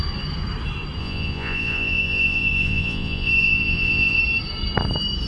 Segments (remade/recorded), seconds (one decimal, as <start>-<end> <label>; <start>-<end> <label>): 0.0-1.0 recorded; 1.0-4.2 remade; 4.2-5.3 recorded